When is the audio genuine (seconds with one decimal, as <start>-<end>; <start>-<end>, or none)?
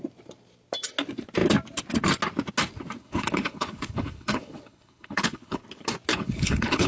0.0-3.0; 5.6-6.1